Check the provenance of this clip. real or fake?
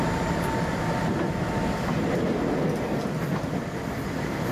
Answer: real